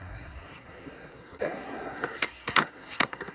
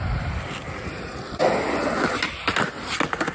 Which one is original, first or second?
second